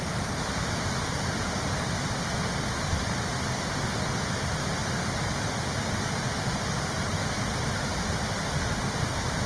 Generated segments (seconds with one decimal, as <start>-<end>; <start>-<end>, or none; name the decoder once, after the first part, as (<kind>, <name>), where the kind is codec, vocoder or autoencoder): none